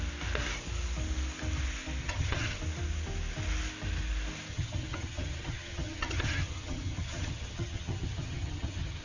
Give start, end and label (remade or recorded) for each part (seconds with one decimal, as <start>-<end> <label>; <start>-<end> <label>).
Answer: 0.0-2.0 recorded; 2.0-2.6 remade; 2.6-4.5 recorded; 4.5-9.0 remade